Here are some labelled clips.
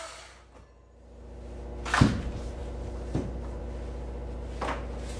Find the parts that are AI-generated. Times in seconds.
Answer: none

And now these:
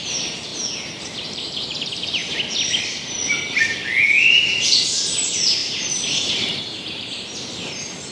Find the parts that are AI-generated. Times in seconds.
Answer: 0.0-0.5 (vocoder, BigVGAN v2); 1.0-2.2; 4.3-8.1

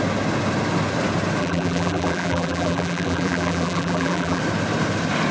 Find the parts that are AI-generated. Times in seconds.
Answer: 1.4-4.4 (vocoder, BigVGAN v2)

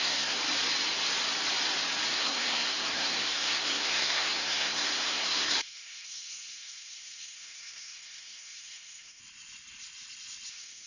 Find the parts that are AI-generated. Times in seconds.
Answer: 0.0-0.4 (codec, SNAC); 2.1-9.2; 10.5-10.9

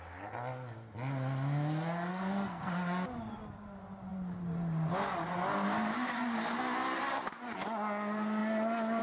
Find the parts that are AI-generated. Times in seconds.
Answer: 2.1-2.7 (codec, SNAC)

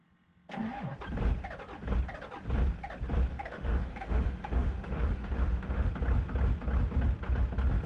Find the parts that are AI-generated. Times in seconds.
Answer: 3.3-5.9 (autoencoder, DAC-VAE)

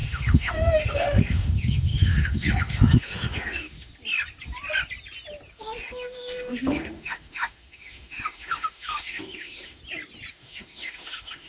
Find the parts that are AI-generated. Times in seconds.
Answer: 0.0-3.9 (autoencoder, DAC-VAE); 5.6-9.8; 10.3-11.5